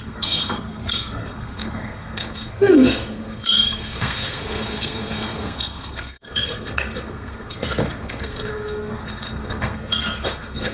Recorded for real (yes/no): no